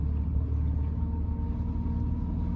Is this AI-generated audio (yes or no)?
no